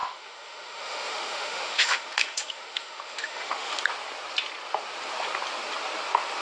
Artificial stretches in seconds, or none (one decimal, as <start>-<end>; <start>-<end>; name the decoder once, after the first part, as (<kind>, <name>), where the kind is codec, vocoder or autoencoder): 0.0-3.8 (autoencoder, DAC-VAE)